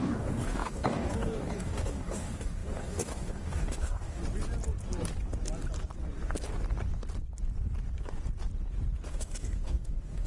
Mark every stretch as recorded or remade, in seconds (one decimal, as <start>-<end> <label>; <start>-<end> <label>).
0.0-4.2 remade; 4.2-9.1 recorded; 9.1-10.3 remade